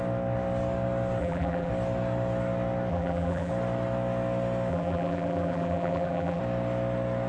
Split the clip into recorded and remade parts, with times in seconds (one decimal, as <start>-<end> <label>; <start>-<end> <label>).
0.0-1.2 recorded; 1.2-1.7 remade; 1.7-2.9 recorded; 2.9-3.5 remade; 3.5-4.7 recorded; 4.7-6.4 remade; 6.4-7.3 recorded